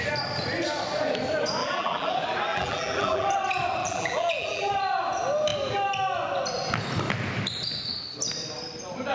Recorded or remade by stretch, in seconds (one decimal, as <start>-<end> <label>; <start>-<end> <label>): 0.0-1.6 recorded; 1.6-2.1 remade; 2.1-2.5 recorded; 2.5-3.3 remade; 3.3-3.8 recorded; 3.8-4.7 remade; 4.7-9.1 recorded